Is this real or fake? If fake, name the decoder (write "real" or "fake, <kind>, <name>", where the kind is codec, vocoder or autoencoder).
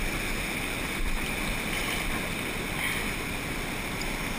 real